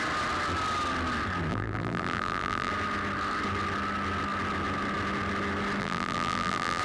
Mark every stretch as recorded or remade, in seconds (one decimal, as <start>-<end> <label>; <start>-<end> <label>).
0.0-1.5 recorded; 1.5-2.7 remade; 2.7-5.8 recorded; 5.8-6.8 remade